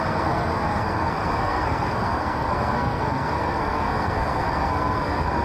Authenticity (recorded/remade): remade